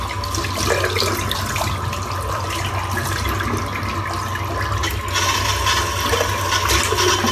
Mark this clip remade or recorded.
recorded